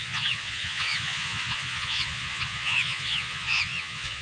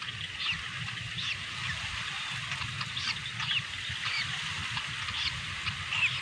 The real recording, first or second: second